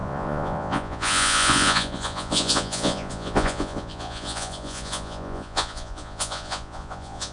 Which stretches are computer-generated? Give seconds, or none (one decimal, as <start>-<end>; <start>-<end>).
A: 0.0-7.3

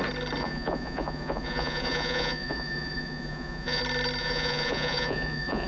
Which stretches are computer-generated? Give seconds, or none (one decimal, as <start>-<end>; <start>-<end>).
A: 0.4-3.8; 4.2-5.7